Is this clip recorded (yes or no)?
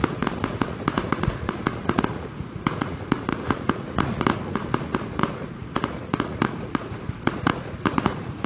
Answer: no